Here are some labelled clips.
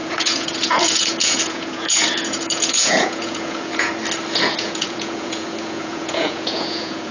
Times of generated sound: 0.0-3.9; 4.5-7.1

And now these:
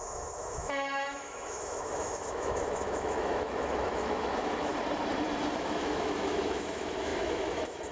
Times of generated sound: 0.0-4.7; 5.5-7.9

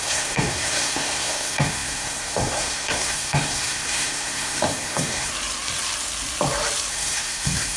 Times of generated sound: 0.0-5.3; 6.9-7.8

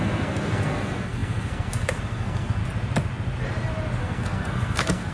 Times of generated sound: 0.0-2.6; 4.0-5.1

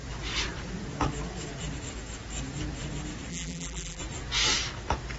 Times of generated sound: 3.3-4.0

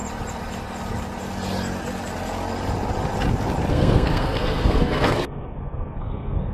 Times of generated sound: 3.7-6.5

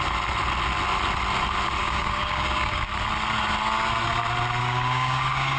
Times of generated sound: 1.8-2.9; 4.6-5.6